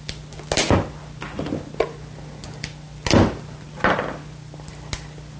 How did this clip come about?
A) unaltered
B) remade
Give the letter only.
A